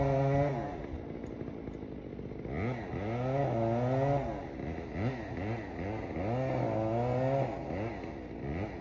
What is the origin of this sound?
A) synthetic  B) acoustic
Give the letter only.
B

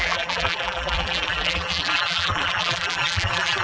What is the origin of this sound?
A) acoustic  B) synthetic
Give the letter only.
B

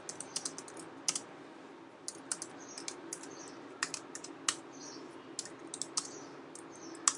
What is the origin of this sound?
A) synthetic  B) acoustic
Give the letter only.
B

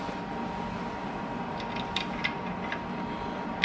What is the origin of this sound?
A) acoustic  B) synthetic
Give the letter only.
A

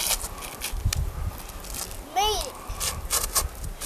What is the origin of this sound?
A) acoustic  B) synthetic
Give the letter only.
A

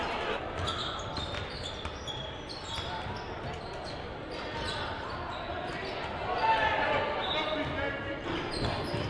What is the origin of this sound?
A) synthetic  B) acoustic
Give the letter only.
B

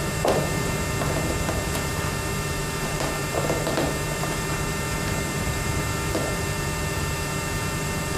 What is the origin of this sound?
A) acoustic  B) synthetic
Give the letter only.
B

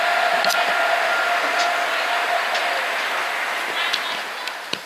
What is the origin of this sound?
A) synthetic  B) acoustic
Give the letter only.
B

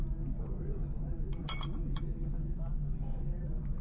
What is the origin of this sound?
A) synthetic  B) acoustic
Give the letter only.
A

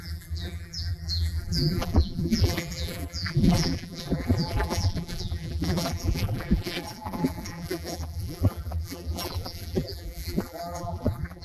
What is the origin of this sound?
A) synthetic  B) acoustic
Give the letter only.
A